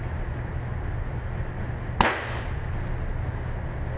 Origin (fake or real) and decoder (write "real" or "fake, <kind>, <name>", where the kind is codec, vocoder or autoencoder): real